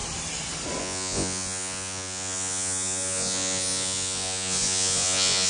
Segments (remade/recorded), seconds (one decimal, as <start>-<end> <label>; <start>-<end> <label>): 0.0-0.8 recorded; 0.8-5.5 remade